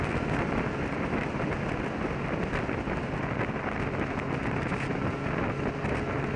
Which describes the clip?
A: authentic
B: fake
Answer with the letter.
A